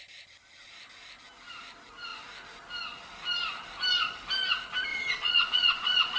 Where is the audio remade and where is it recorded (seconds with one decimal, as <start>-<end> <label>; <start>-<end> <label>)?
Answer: 0.0-4.9 recorded; 4.9-6.2 remade